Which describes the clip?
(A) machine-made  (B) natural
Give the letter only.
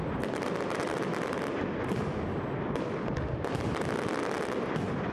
B